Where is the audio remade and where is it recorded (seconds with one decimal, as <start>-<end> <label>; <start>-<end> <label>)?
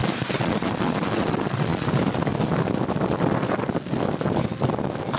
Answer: 0.0-1.9 remade; 1.9-5.2 recorded